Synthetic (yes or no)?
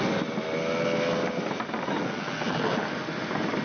no